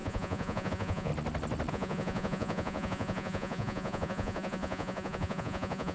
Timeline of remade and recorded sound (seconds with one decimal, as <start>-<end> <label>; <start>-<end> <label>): 0.0-1.1 remade; 1.1-1.7 recorded; 1.7-5.9 remade